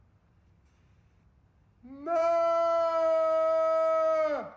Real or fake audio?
real